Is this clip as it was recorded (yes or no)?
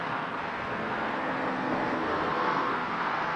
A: no